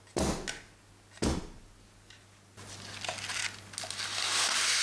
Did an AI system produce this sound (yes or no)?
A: no